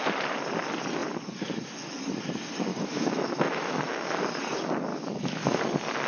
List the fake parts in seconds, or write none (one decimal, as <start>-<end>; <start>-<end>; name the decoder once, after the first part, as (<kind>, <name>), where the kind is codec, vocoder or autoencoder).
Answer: 2.7-4.3 (autoencoder, DAC-VAE); 4.9-5.6